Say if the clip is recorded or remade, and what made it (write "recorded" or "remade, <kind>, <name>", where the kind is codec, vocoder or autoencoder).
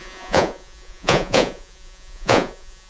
remade, vocoder, Vocos